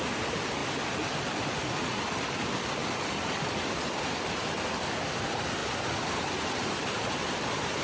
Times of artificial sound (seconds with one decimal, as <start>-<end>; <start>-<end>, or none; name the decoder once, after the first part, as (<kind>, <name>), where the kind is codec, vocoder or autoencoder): none